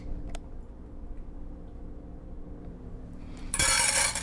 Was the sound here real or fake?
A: real